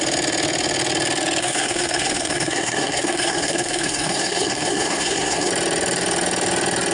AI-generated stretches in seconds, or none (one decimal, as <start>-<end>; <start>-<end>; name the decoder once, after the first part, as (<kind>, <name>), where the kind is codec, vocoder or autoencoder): 1.4-5.5 (codec, SNAC)